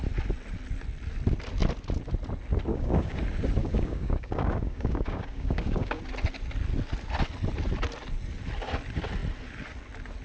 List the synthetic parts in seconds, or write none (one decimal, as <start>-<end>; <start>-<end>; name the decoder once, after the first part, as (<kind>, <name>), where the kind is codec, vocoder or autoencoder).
2.7-3.2 (codec, DAC); 3.6-6.0